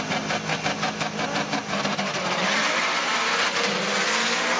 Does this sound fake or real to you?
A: real